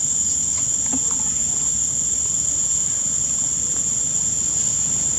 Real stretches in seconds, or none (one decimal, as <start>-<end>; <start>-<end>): 0.0-5.2